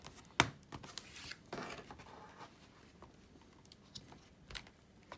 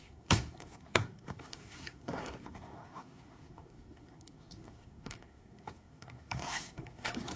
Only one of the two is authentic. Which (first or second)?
first